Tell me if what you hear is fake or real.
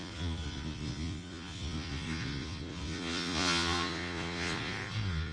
fake